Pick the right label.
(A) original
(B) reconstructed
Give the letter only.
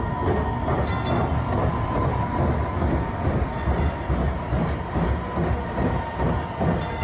A